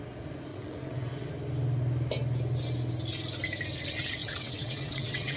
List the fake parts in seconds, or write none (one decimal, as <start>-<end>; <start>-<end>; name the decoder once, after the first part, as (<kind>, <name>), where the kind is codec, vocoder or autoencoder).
0.5-1.3 (vocoder, WaveNeXt); 4.2-5.4